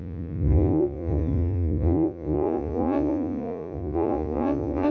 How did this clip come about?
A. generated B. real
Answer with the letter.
A